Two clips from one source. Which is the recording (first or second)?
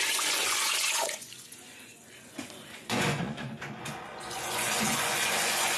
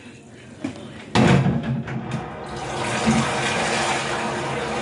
second